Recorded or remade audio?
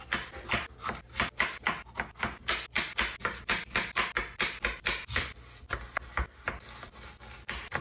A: recorded